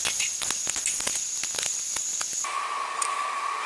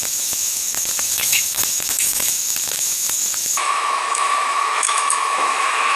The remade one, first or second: second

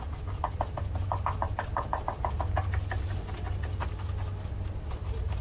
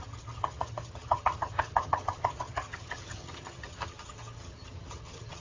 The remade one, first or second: second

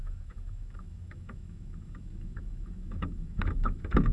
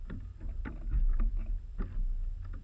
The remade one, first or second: first